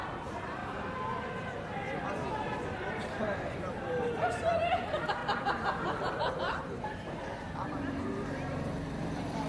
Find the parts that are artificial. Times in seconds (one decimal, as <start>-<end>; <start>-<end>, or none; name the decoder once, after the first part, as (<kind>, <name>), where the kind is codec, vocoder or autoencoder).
0.0-0.6 (vocoder, BigVGAN v2); 2.9-5.2; 6.0-9.5